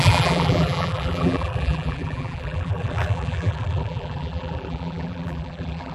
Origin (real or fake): fake